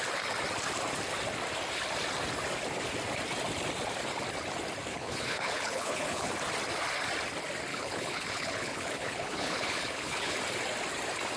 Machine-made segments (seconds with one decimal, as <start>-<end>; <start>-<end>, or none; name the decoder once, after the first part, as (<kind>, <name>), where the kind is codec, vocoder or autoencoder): 4.9-6.3 (codec, HILCodec); 7.7-10.4